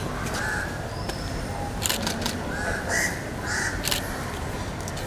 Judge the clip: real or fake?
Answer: real